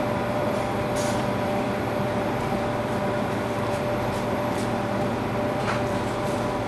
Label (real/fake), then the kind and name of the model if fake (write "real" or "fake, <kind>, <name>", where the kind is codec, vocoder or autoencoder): fake, vocoder, BigVGAN v2